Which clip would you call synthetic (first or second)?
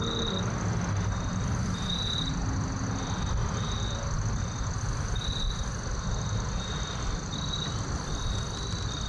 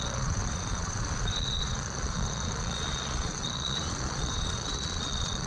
second